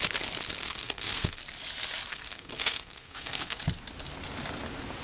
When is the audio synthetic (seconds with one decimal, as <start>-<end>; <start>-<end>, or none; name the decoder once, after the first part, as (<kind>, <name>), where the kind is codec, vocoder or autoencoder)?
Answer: 0.6-1.4 (codec, SNAC); 2.1-3.6